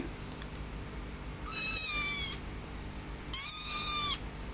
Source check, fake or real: real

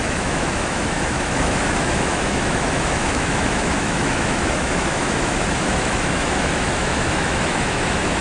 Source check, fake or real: fake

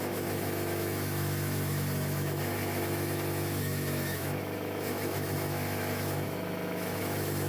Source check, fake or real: fake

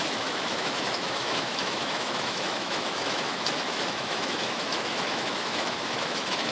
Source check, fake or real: fake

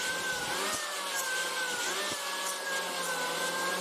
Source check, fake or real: real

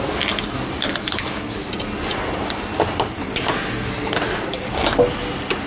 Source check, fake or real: real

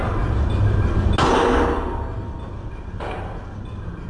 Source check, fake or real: real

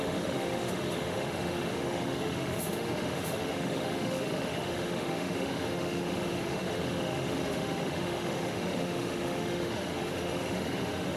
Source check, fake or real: fake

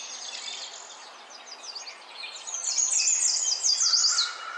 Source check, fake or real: real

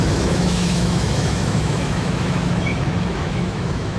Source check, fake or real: fake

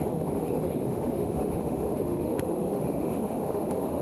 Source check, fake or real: fake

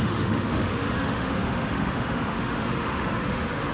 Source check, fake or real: fake